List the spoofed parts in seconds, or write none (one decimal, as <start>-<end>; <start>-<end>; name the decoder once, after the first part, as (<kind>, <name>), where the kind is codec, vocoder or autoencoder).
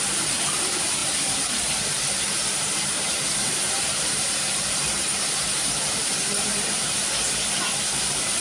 0.0-7.0 (vocoder, BigVGAN v2); 7.8-8.4